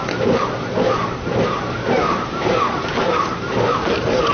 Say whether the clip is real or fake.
real